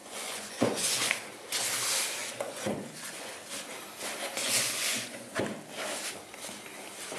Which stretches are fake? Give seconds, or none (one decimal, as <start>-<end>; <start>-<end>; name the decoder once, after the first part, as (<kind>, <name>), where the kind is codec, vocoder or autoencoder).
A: 0.0-1.1 (vocoder, Vocos); 2.2-3.3; 4.4-5.4